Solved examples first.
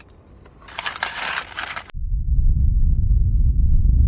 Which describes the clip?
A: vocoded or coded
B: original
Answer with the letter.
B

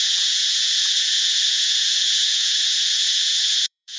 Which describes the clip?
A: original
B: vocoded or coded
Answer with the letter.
B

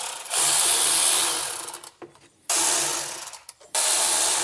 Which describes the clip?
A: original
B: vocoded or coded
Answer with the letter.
A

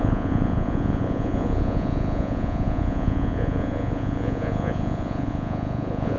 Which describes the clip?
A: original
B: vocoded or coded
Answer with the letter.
B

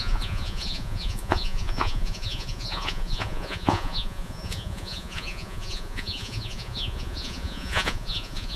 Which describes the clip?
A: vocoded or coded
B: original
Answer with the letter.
A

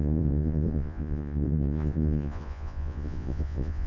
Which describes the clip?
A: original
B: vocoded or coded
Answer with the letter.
B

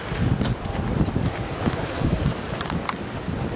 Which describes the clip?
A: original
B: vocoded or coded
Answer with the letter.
A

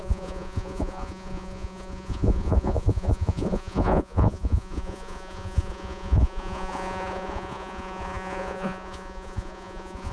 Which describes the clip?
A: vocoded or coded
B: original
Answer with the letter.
A